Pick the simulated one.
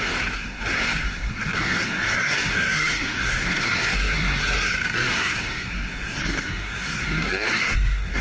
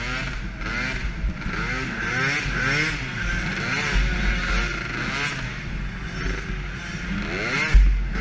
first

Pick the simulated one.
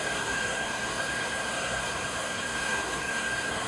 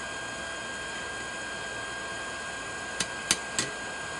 first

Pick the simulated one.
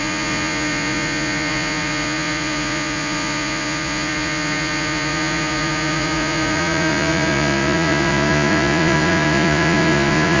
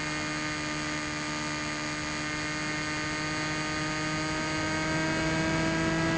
first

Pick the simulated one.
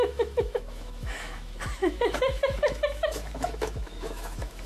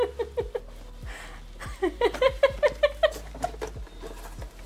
first